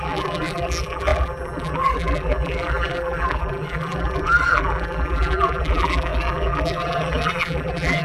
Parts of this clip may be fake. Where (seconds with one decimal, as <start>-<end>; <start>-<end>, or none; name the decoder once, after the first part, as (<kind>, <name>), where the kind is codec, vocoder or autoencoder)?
0.0-8.0 (vocoder, BigVGAN v2)